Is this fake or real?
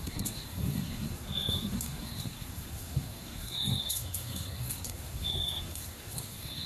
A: fake